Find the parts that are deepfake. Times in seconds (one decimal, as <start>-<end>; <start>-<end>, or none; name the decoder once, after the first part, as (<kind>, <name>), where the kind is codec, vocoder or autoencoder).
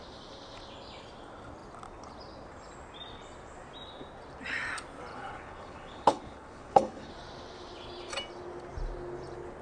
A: 5.1-7.1 (codec, HILCodec)